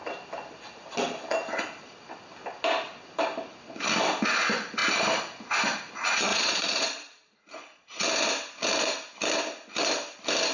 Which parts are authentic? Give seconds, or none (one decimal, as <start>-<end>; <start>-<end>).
0.0-6.3; 8.0-10.5